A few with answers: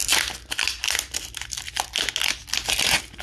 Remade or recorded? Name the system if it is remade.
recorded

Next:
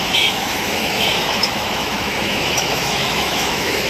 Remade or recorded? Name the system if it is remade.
remade, autoencoder, DAC-VAE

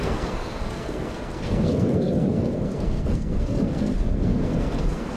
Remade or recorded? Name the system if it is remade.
remade, codec, SNAC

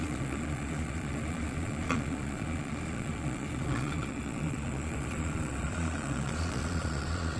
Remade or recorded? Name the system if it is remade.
remade, vocoder, Vocos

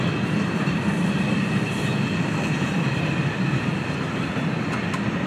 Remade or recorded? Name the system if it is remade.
remade, vocoder, BigVGAN v2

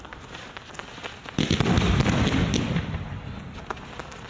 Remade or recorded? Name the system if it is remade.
recorded